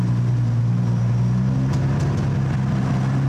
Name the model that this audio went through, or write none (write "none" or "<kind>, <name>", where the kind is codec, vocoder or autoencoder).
none